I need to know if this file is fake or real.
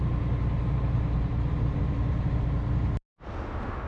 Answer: real